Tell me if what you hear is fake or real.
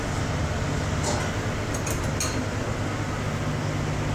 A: real